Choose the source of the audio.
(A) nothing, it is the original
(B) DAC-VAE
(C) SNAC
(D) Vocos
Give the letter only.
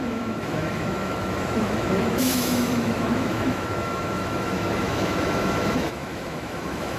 B